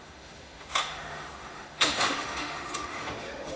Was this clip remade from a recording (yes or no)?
yes